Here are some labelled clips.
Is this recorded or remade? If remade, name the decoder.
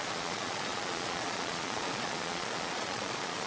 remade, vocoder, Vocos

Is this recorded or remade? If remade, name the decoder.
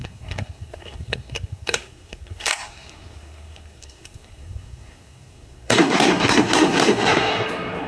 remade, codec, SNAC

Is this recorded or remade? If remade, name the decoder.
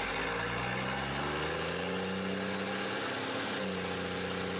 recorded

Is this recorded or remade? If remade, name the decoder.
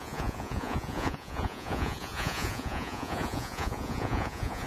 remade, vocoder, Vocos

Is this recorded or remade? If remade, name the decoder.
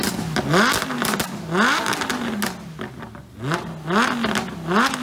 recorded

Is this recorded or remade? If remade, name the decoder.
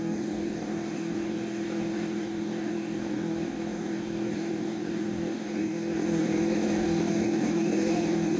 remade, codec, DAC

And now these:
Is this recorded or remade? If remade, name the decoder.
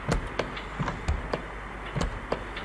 recorded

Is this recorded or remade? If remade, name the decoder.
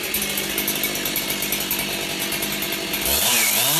recorded